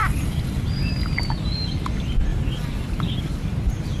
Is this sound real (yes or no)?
yes